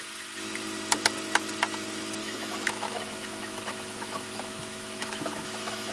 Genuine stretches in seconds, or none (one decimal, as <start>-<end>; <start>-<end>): 0.0-2.2